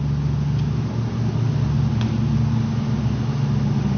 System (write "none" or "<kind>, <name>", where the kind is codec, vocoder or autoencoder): none